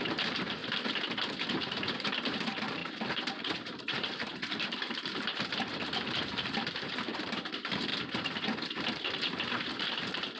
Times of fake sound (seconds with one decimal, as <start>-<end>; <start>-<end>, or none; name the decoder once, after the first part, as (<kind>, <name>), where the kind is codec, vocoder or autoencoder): 0.0-0.6 (vocoder, BigVGAN v2); 1.5-7.9; 8.7-10.4